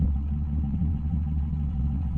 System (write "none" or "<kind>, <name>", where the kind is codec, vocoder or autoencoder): vocoder, WaveNeXt